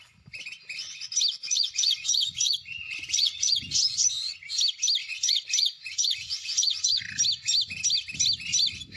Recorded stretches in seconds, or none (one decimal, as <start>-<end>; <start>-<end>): 0.0-1.4; 4.6-5.0; 7.0-9.0